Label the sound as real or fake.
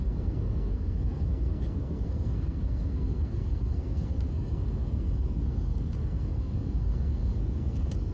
fake